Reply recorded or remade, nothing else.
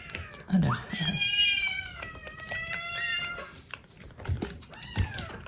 recorded